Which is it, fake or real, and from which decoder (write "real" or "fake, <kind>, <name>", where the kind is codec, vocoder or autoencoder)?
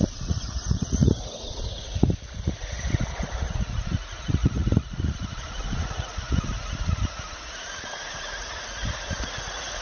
fake, vocoder, Vocos